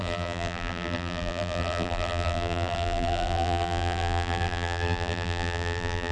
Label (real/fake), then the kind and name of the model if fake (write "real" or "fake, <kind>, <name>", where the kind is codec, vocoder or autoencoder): fake, vocoder, BigVGAN v2